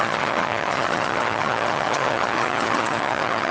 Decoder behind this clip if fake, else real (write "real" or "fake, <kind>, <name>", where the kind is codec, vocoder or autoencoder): fake, vocoder, HiFi-GAN